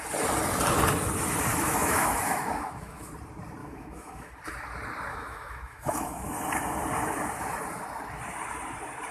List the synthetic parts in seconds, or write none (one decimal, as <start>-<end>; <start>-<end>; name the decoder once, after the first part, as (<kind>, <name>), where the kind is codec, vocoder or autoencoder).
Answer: 1.5-3.1 (autoencoder, DAC-VAE); 3.6-4.3; 5.1-6.3

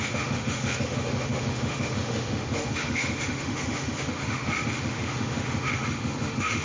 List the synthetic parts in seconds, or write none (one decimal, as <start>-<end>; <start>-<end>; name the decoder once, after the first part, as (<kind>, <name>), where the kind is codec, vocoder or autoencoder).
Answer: 0.0-6.6 (autoencoder, DAC-VAE)